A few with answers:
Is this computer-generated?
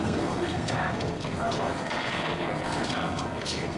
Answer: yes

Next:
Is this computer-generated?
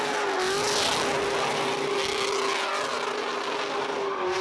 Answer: no